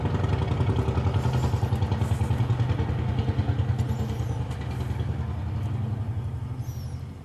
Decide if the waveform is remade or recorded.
recorded